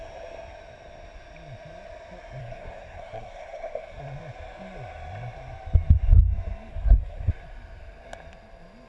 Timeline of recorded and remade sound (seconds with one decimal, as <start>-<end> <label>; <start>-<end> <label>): 0.0-2.4 recorded; 2.4-4.0 remade; 4.0-6.7 recorded; 6.7-7.3 remade; 7.3-8.9 recorded